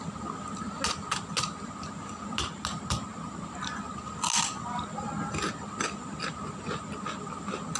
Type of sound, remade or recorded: recorded